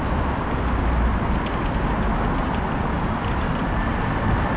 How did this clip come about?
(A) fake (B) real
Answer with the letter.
B